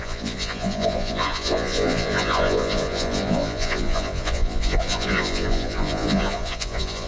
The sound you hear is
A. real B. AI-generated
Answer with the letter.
B